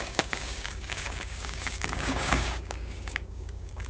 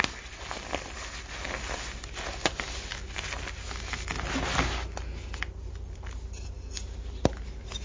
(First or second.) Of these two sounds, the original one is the second